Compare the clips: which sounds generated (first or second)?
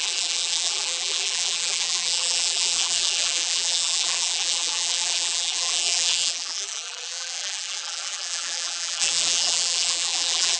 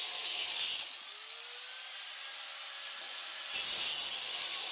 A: first